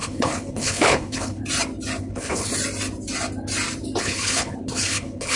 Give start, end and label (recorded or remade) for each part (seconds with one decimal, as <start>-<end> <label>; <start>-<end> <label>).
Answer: 0.0-1.4 remade; 1.4-2.0 recorded; 2.0-2.5 remade; 2.5-4.0 recorded; 4.0-5.4 remade